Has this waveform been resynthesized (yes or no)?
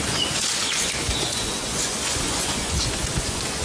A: yes